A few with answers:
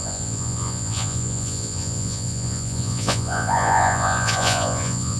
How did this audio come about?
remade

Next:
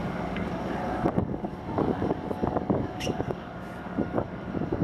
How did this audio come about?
remade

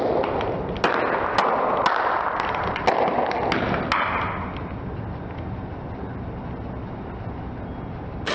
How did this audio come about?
recorded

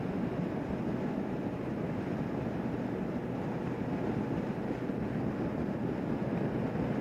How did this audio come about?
recorded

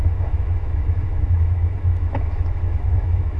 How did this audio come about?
remade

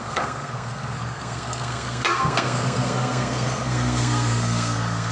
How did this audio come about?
remade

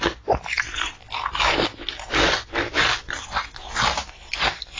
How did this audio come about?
recorded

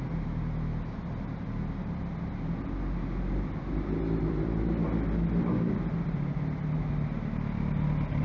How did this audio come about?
recorded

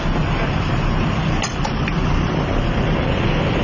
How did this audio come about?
remade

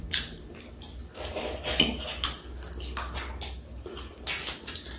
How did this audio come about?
recorded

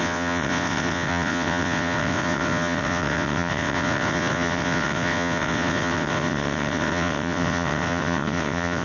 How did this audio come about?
remade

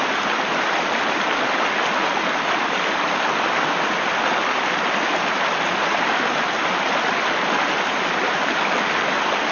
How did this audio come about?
recorded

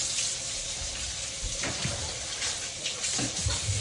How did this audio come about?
recorded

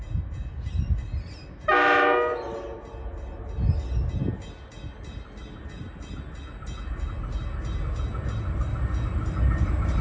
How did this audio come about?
recorded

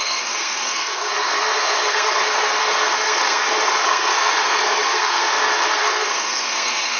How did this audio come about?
remade